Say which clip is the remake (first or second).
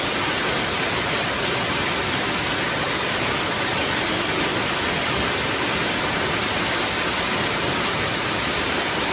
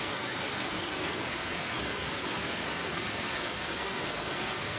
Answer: second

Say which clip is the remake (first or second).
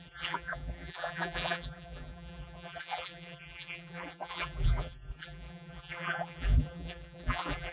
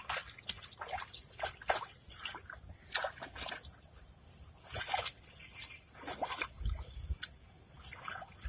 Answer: first